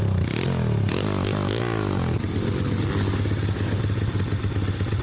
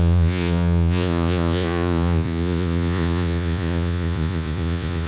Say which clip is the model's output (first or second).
second